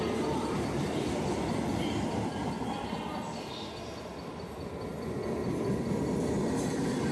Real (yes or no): yes